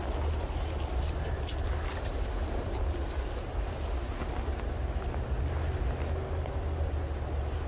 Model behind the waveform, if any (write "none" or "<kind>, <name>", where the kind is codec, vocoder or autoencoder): none